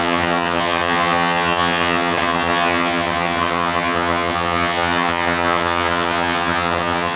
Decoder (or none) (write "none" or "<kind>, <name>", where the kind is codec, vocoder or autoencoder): vocoder, HiFi-GAN